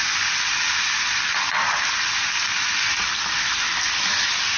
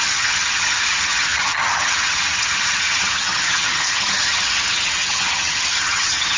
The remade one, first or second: second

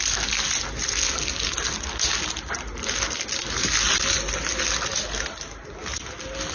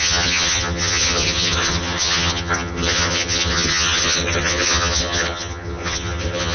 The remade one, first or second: second